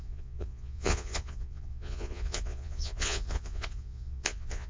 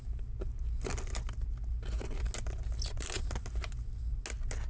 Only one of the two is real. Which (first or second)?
second